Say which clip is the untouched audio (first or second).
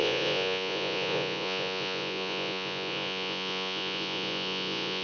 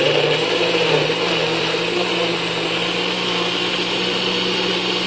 second